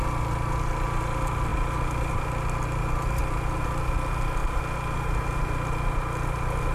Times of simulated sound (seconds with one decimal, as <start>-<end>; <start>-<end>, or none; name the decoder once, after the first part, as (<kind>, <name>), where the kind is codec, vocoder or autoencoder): none